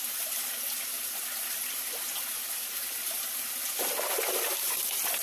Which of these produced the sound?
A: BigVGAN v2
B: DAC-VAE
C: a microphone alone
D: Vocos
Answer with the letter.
C